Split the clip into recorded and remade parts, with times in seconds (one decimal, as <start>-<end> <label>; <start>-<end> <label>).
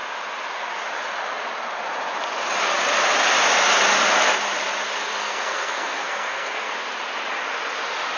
0.0-5.2 recorded; 5.2-6.7 remade; 6.7-8.2 recorded